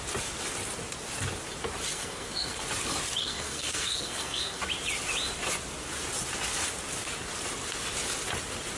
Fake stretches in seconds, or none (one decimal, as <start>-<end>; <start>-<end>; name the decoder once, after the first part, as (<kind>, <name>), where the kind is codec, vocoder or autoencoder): 1.9-2.6 (codec, SNAC); 3.2-4.6

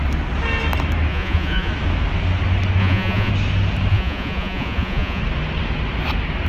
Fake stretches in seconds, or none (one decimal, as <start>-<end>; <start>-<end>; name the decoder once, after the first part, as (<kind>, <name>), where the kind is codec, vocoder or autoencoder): 1.1-1.7 (vocoder, Vocos); 2.8-3.3; 3.9-5.2

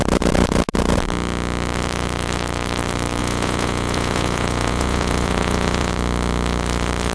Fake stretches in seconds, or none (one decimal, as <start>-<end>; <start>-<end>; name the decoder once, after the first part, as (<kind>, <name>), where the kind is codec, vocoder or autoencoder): 3.2-5.9 (vocoder, Vocos)

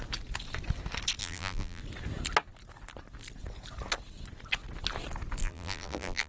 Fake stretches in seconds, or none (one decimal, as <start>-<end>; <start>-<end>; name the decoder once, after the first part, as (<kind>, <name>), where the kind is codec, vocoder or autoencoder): 1.2-1.8 (vocoder, BigVGAN v2); 5.4-6.3

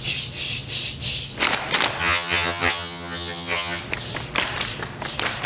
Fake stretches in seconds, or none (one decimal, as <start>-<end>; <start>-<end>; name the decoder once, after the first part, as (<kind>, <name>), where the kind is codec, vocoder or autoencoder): 2.0-3.8 (vocoder, HiFi-GAN)

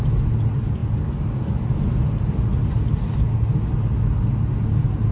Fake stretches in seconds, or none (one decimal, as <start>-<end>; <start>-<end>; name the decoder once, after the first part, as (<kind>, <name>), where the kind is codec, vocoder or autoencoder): none

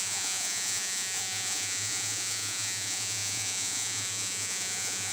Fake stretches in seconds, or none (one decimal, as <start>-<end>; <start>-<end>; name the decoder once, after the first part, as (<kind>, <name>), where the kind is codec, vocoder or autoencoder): 0.0-5.1 (vocoder, Vocos)

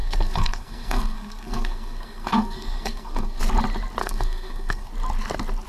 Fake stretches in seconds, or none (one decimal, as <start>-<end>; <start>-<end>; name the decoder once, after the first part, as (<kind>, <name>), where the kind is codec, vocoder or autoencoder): 0.0-3.4 (codec, SNAC); 4.0-4.9